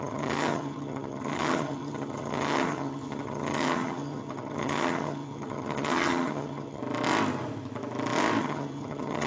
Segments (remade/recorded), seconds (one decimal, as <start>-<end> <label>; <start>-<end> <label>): 0.0-6.8 remade; 6.8-8.4 recorded; 8.4-9.3 remade